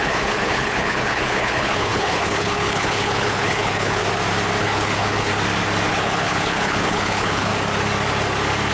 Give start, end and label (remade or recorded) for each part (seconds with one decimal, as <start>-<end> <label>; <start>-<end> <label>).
0.0-4.0 remade; 4.0-4.6 recorded; 4.6-5.3 remade; 5.3-5.9 recorded; 5.9-7.5 remade; 7.5-8.7 recorded